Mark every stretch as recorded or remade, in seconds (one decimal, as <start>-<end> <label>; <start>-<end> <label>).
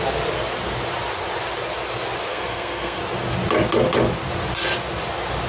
0.0-2.3 recorded; 2.3-3.0 remade; 3.0-5.5 recorded